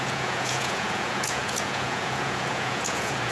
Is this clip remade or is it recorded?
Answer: remade